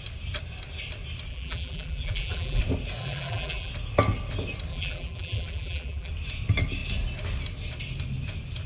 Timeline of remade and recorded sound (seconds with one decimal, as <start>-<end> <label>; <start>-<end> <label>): 0.0-1.3 recorded; 1.3-2.6 remade; 2.6-3.0 recorded; 3.0-3.7 remade; 3.7-4.7 recorded; 4.7-6.1 remade; 6.1-8.7 recorded